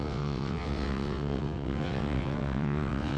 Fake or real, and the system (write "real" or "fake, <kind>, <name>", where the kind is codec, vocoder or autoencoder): fake, vocoder, WaveNeXt